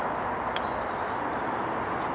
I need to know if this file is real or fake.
real